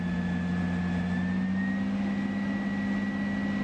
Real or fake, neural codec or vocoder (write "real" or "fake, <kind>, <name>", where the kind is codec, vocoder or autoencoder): real